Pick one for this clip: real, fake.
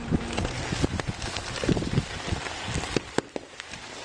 real